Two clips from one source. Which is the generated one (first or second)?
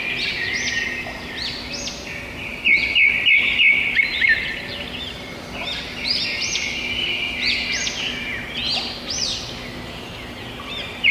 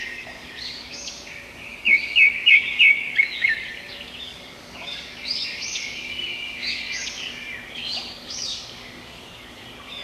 second